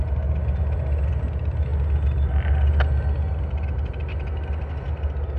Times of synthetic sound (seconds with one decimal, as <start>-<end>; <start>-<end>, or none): none